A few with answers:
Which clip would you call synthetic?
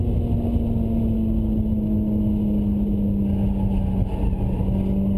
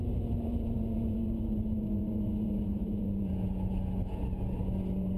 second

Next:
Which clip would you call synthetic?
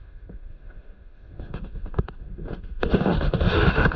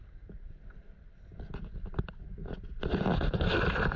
first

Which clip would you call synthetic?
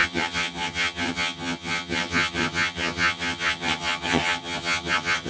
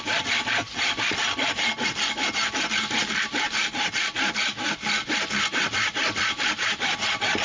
first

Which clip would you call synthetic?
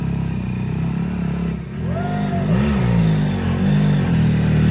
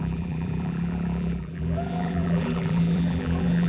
second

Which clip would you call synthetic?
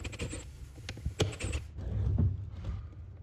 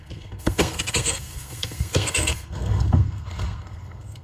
second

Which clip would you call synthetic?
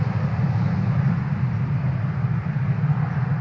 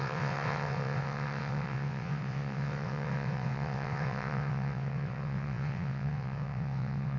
second